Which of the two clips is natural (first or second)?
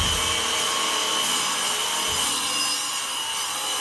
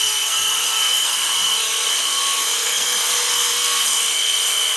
first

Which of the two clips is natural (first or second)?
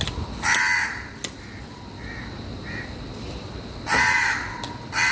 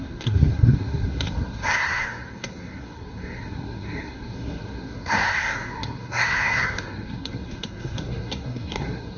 first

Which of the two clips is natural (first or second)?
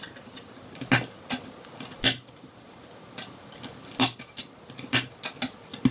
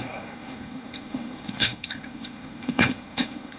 first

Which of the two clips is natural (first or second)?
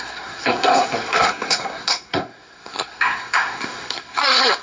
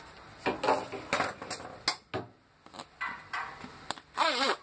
second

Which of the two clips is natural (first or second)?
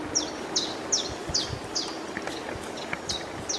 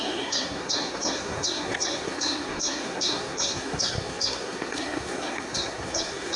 first